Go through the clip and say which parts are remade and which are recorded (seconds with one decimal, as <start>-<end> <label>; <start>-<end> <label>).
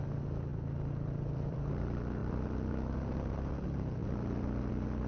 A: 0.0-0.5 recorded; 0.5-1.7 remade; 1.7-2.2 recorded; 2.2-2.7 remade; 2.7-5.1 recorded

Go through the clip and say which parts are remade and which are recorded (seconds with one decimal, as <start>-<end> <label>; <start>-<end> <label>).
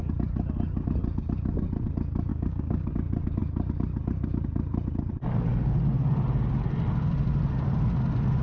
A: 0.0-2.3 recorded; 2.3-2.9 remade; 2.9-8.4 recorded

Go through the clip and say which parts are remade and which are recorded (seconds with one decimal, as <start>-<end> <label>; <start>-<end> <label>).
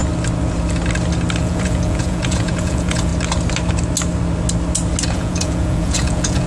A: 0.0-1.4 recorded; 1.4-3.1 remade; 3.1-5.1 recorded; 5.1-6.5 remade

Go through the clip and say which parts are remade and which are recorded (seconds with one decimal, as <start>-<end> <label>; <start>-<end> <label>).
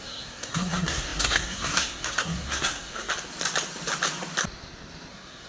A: 0.0-3.1 remade; 3.1-5.1 recorded; 5.1-5.5 remade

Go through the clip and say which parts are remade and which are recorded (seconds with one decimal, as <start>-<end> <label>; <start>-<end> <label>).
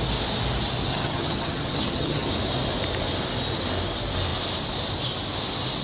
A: 0.0-0.9 recorded; 0.9-2.3 remade; 2.3-5.8 recorded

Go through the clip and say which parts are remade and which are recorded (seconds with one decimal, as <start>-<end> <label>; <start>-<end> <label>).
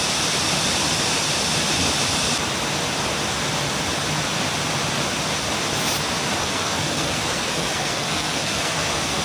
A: 0.0-6.4 recorded; 6.4-9.2 remade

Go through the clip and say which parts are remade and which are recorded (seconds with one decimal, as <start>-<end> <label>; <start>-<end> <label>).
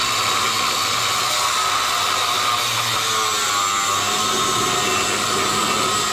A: 0.0-6.1 recorded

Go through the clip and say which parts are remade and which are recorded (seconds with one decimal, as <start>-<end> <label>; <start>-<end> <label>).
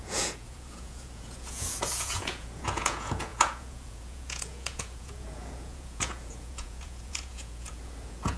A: 0.0-8.4 remade